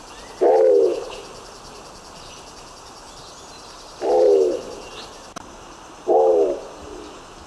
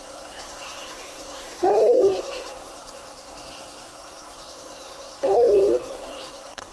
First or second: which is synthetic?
second